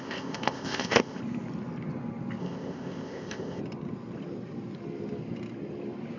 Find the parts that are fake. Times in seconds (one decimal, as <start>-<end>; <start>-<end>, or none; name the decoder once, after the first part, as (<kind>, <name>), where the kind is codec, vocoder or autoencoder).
0.0-1.2 (codec, ZipCodec); 2.4-3.6